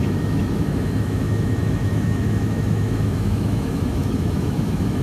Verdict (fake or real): fake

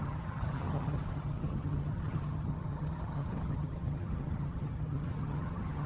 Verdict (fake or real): fake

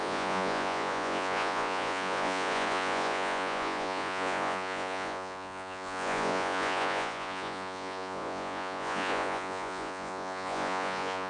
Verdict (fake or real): fake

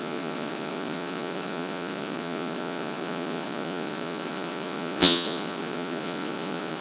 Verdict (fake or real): fake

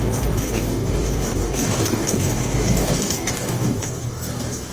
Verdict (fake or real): fake